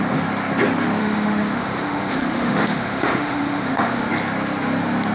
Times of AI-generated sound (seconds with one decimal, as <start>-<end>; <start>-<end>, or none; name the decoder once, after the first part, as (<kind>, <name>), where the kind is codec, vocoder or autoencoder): 1.0-4.1 (autoencoder, DAC-VAE)